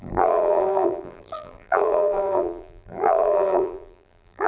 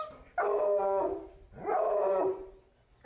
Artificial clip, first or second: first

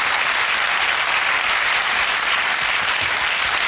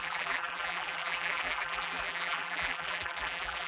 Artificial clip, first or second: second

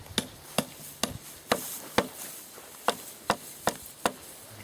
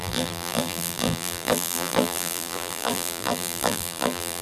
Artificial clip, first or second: second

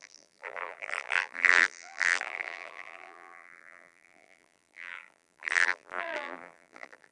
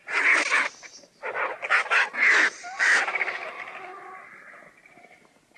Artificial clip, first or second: first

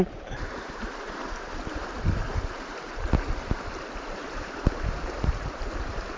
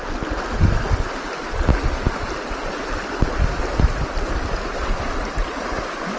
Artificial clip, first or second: first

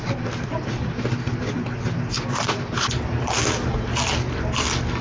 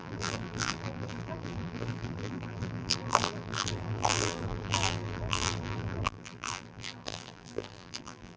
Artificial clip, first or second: second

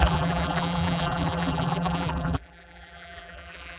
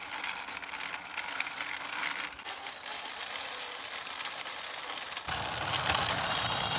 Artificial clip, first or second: first